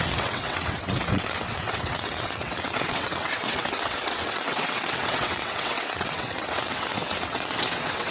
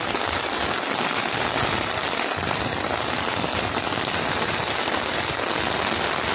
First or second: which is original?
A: second